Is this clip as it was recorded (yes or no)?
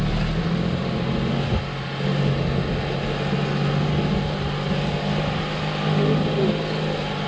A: yes